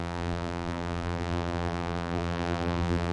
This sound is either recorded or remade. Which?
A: remade